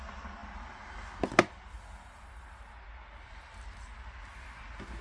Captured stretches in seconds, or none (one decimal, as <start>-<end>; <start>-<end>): 0.0-5.0